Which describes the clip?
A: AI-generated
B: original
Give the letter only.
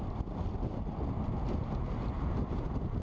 B